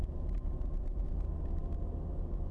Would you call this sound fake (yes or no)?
no